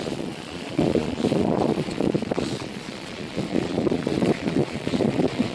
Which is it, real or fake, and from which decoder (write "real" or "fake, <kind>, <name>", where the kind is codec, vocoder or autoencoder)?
fake, vocoder, Vocos